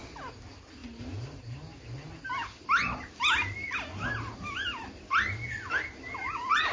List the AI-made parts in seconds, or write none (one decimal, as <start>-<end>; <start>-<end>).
none